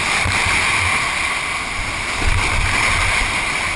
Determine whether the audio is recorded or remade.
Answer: recorded